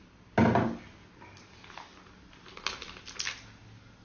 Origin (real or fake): real